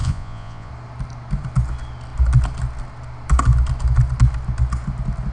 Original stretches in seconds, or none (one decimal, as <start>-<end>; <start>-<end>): 0.7-5.3